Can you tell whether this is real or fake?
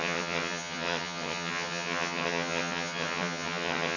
fake